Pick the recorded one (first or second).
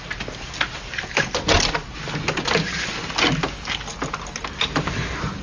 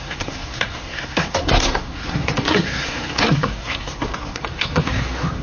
first